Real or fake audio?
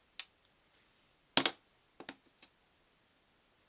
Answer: real